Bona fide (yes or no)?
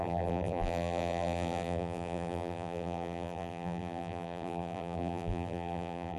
no